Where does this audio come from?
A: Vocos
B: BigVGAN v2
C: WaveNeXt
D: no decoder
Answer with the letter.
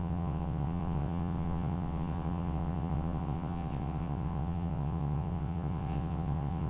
C